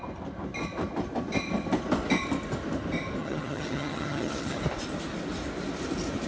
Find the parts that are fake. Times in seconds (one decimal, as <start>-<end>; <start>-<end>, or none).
3.2-4.6